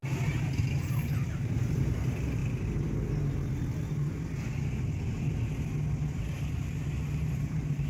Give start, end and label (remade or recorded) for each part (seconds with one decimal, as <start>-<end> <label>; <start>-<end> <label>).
0.0-0.7 recorded; 0.7-2.4 remade; 2.4-7.0 recorded; 7.0-7.9 remade

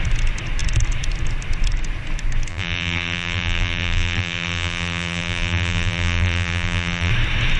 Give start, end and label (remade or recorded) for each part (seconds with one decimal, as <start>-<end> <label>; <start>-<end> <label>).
0.0-2.5 recorded; 2.5-7.1 remade; 7.1-7.6 recorded

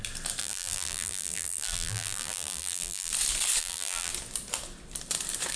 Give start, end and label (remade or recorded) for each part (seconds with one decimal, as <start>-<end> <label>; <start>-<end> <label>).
0.0-0.4 recorded; 0.4-3.1 remade; 3.1-3.6 recorded; 3.6-4.1 remade; 4.1-5.6 recorded